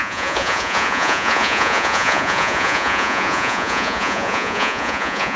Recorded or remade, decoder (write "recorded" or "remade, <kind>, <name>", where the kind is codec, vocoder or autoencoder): remade, vocoder, Vocos